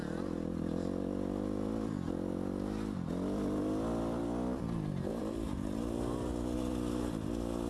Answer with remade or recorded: recorded